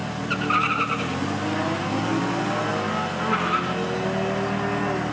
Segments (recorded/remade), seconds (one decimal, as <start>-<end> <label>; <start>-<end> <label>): 0.0-5.1 recorded